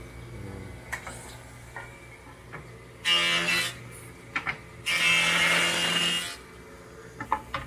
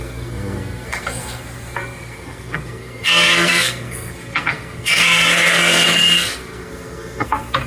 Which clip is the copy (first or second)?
second